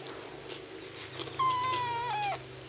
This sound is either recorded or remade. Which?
recorded